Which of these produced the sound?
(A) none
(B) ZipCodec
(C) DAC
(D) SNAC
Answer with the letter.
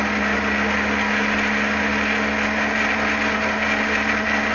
A